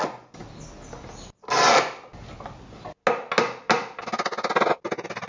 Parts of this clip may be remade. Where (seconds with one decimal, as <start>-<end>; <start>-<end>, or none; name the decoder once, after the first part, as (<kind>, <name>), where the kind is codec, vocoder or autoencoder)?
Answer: none